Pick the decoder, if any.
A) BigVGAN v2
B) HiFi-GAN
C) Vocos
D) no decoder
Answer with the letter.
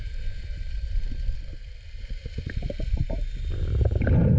D